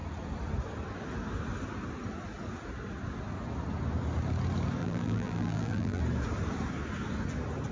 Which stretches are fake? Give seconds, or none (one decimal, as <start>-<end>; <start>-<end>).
4.8-6.0